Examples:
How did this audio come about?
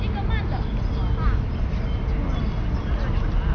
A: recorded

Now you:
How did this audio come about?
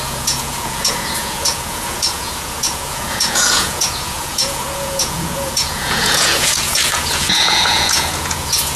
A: remade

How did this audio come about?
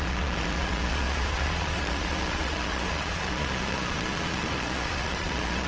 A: remade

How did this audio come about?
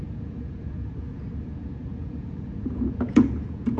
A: remade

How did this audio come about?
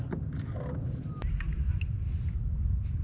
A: recorded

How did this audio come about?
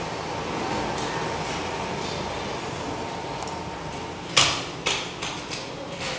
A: recorded